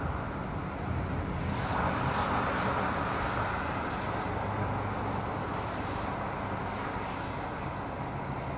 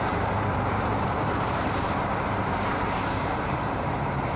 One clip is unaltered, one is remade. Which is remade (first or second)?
second